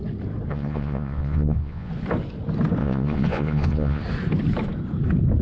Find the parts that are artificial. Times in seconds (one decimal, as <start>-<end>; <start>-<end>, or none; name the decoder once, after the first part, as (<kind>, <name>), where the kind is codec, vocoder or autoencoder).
0.5-1.9 (vocoder, Vocos); 2.8-4.0